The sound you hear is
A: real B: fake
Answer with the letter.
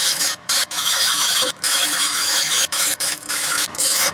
B